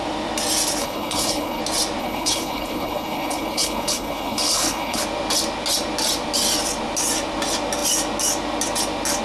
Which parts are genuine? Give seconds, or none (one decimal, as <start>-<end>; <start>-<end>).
0.0-0.8; 1.6-2.0; 5.0-9.2